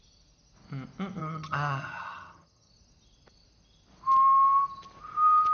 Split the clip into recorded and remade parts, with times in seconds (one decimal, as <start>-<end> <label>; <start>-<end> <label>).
0.0-1.2 recorded; 1.2-2.7 remade; 2.7-5.5 recorded